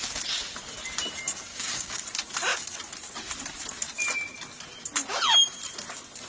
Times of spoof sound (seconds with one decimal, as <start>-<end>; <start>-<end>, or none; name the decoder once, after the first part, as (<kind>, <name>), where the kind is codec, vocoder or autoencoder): 1.5-2.0 (codec, DAC)